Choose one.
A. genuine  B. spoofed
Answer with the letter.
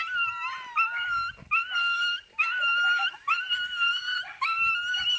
A